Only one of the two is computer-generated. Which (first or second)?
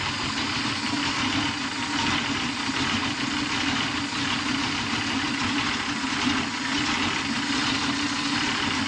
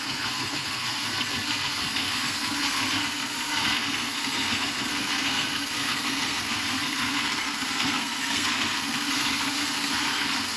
second